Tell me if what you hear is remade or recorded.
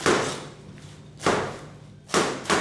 recorded